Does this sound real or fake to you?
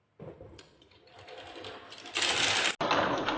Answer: real